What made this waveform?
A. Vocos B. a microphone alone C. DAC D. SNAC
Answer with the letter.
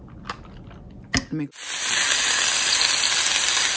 B